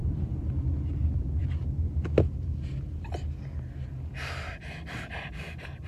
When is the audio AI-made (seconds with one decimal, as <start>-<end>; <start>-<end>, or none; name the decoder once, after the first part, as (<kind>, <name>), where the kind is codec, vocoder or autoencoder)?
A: none